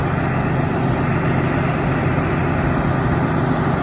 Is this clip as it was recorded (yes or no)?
yes